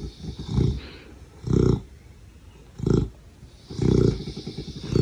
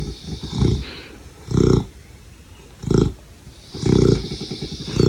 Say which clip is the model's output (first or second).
second